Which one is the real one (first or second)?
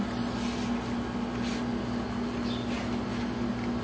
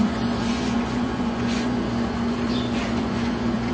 first